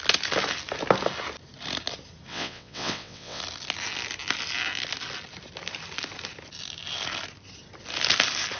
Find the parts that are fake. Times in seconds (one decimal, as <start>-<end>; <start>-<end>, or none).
2.3-3.4